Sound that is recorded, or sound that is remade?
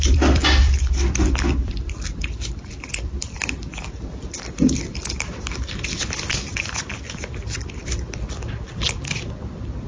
remade